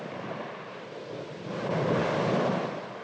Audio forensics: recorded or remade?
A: recorded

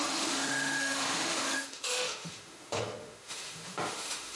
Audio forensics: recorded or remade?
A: remade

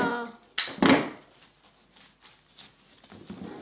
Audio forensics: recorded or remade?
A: recorded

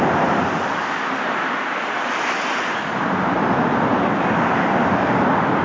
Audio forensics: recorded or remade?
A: recorded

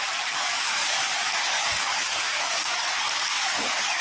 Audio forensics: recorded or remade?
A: remade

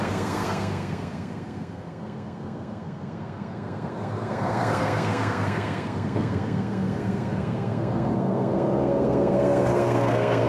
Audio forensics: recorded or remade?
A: remade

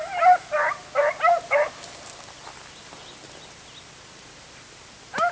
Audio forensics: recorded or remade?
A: recorded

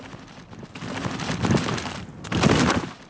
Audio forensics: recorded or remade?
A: recorded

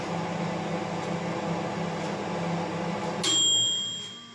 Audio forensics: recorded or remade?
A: recorded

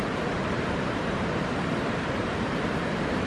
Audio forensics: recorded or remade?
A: remade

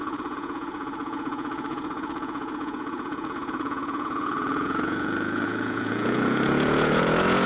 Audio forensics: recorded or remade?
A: remade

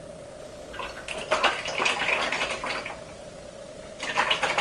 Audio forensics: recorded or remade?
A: recorded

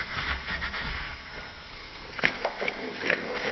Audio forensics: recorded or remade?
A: remade